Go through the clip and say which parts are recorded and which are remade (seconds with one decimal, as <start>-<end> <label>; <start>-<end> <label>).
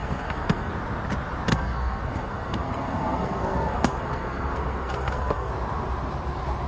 0.0-0.7 remade; 0.7-1.5 recorded; 1.5-5.5 remade; 5.5-6.7 recorded